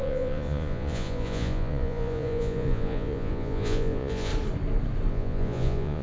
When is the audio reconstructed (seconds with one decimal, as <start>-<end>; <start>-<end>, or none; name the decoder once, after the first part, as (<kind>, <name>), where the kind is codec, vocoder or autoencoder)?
0.0-4.3 (vocoder, Vocos); 5.1-6.0